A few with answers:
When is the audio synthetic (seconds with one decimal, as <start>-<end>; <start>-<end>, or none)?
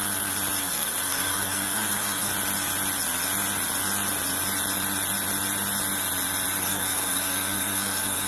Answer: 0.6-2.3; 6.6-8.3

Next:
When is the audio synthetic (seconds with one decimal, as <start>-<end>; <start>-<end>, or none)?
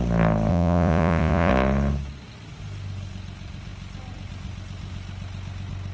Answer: 0.5-1.5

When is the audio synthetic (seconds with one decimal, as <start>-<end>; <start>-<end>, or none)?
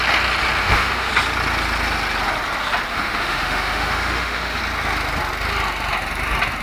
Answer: 0.6-1.1; 2.9-4.6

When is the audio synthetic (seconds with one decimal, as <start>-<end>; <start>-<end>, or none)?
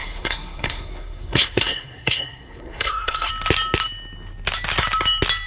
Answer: 0.0-3.3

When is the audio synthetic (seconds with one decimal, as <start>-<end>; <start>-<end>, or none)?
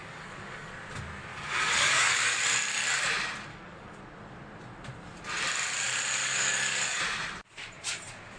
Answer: 0.0-0.7; 1.3-2.4; 3.5-4.0; 6.2-7.0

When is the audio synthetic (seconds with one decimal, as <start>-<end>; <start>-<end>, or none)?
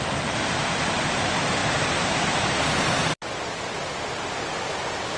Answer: none